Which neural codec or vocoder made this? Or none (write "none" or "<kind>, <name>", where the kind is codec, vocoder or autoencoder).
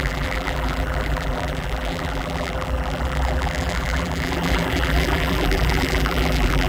vocoder, BigVGAN v2